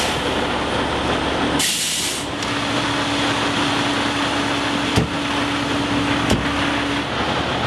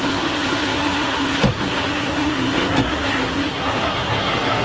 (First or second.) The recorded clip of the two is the first